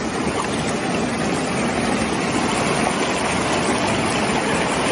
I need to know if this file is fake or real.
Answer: real